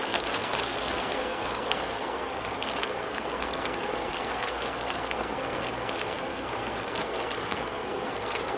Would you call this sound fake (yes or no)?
yes